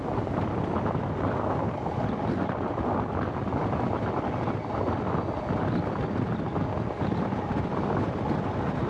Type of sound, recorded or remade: recorded